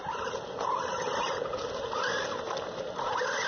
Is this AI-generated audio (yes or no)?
yes